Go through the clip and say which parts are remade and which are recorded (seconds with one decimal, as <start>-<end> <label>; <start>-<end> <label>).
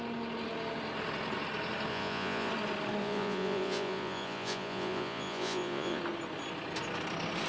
0.0-1.9 recorded; 1.9-2.5 remade; 2.5-3.0 recorded; 3.0-6.0 remade; 6.0-7.5 recorded